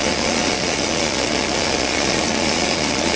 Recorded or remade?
remade